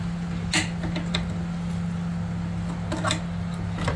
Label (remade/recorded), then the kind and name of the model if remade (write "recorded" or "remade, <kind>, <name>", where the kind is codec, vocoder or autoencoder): recorded